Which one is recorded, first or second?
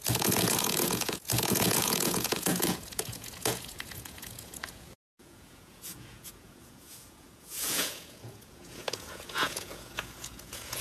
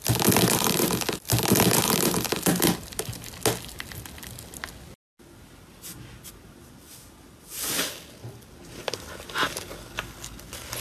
second